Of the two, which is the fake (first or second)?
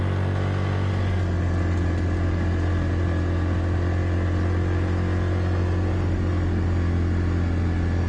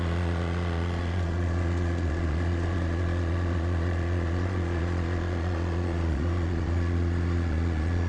second